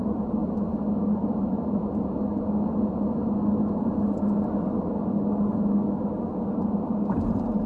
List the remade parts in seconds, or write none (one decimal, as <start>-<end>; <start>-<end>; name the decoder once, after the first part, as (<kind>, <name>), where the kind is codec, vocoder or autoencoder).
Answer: 0.0-0.4 (vocoder, BigVGAN v2); 1.0-2.2; 6.5-7.7